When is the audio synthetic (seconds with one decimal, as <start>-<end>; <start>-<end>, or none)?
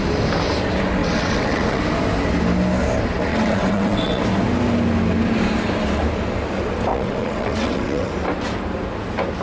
1.0-1.8; 3.3-4.2; 6.9-8.1